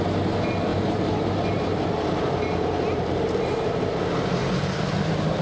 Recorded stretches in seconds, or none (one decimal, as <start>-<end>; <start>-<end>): 0.0-0.7; 3.7-4.4